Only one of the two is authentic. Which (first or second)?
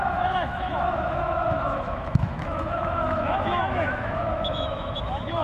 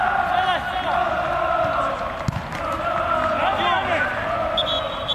second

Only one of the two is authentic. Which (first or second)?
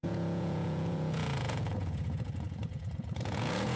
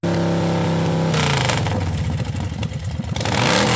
second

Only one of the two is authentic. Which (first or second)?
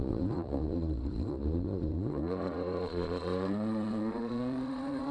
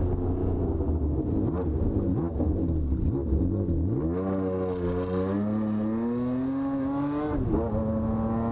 second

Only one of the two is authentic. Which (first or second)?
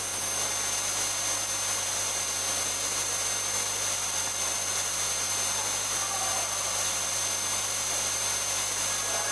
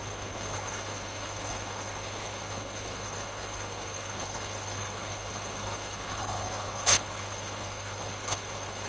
first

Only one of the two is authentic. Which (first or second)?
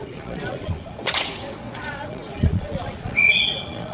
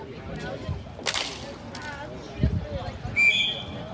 second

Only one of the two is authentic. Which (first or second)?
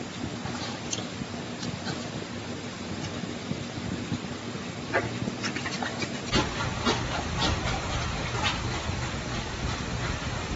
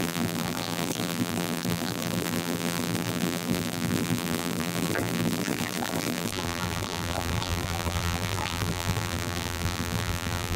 first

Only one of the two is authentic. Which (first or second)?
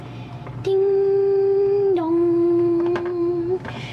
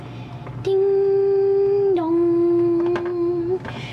second